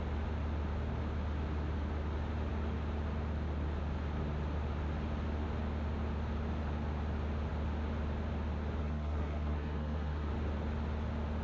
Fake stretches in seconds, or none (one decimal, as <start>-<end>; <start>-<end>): 8.8-10.3